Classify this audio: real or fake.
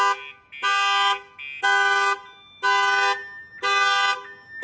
real